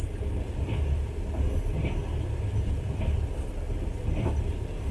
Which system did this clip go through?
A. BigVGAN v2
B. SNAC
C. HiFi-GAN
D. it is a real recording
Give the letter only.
D